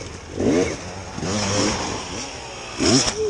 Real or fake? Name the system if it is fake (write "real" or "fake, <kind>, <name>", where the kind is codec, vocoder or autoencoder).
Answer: real